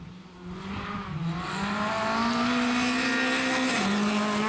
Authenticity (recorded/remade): recorded